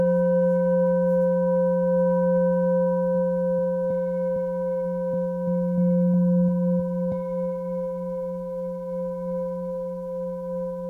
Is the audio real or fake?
fake